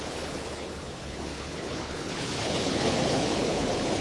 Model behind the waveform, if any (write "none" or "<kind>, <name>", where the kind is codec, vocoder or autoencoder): codec, HILCodec